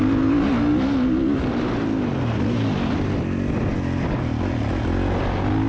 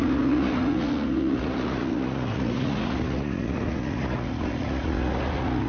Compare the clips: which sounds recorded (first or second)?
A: first